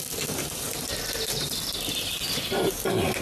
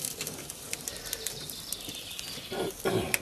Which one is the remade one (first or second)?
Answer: second